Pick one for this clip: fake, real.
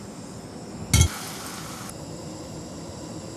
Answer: real